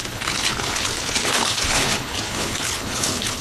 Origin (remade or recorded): remade